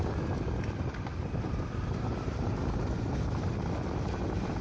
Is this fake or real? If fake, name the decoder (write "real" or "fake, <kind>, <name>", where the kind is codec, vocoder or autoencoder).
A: real